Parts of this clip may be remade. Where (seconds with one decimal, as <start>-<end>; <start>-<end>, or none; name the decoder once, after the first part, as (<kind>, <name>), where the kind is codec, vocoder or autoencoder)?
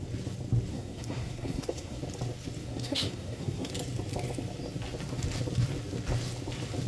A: 0.7-2.0 (codec, SNAC); 2.6-3.7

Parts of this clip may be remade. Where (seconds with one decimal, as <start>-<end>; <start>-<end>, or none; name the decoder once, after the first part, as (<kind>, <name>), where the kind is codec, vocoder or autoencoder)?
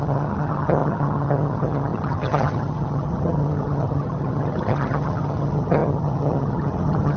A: 0.0-7.2 (vocoder, HiFi-GAN)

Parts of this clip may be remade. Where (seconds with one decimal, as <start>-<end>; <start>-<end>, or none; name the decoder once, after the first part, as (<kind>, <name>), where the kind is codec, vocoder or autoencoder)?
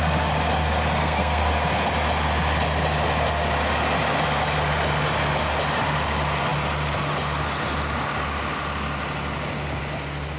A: 1.0-1.5 (codec, SNAC)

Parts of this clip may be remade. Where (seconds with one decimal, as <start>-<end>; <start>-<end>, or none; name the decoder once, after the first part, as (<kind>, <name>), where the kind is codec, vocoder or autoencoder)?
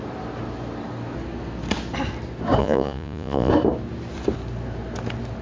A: 2.6-3.5 (vocoder, Vocos)